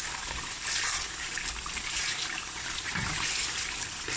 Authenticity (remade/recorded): remade